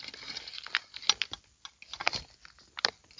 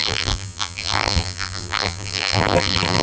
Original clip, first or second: first